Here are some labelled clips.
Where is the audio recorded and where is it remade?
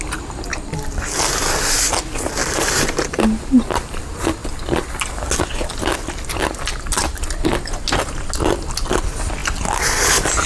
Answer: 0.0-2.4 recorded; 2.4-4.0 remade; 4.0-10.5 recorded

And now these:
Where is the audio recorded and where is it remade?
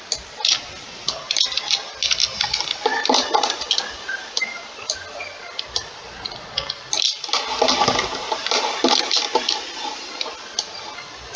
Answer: 0.0-11.4 recorded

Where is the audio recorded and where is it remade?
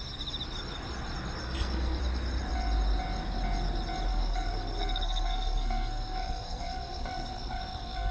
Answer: 0.0-1.4 recorded; 1.4-2.0 remade; 2.0-4.1 recorded; 4.1-8.1 remade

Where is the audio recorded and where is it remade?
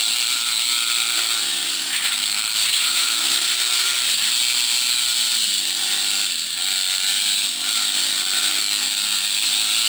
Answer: 0.0-1.8 recorded; 1.8-3.5 remade; 3.5-9.9 recorded